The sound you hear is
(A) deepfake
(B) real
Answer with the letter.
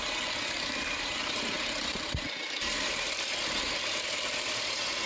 A